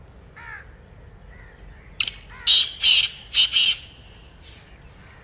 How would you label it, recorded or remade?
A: recorded